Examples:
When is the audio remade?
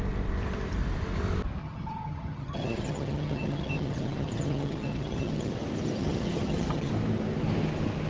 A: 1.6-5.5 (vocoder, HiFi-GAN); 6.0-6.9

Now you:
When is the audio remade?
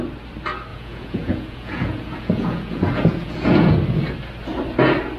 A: 0.7-3.7 (vocoder, Vocos)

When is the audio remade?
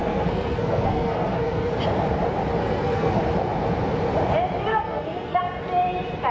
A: 0.0-1.7 (codec, SNAC); 2.6-3.2; 4.7-5.4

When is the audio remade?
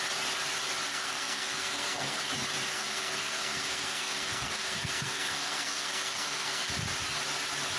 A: 0.9-2.2 (codec, SNAC); 2.7-6.7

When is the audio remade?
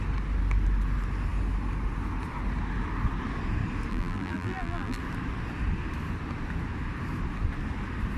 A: 3.9-5.0 (vocoder, BigVGAN v2)